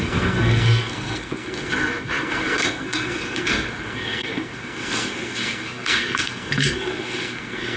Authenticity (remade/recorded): remade